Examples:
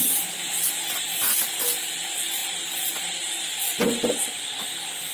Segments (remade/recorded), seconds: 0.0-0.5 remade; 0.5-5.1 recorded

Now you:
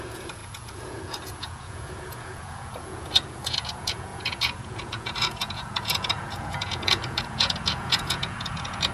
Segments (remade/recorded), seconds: 0.0-8.9 remade

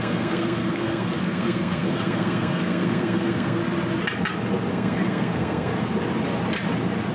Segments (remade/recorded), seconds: 0.0-3.6 remade; 3.6-4.7 recorded; 4.7-5.7 remade; 5.7-7.1 recorded

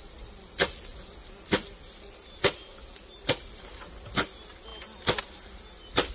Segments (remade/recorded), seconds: 0.0-6.1 recorded

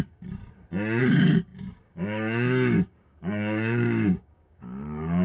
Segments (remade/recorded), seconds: 0.0-0.4 remade; 0.4-1.0 recorded; 1.0-5.2 remade

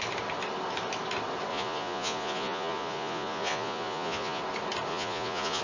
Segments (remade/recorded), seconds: 0.0-1.5 recorded; 1.5-4.4 remade; 4.4-4.9 recorded; 4.9-5.6 remade